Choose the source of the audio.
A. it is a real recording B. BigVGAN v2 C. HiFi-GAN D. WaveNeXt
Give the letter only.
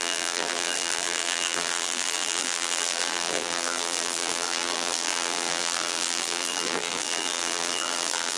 B